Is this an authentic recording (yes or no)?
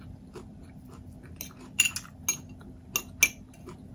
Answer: yes